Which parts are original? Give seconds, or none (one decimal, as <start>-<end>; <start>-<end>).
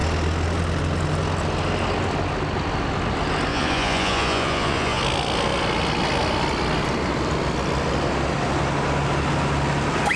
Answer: 0.0-3.5; 5.0-10.2